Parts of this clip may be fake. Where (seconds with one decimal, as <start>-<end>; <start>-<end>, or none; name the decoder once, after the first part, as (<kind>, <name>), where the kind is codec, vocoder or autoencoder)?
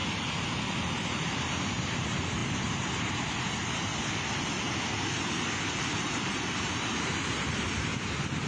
0.9-3.9 (vocoder, BigVGAN v2); 5.8-7.9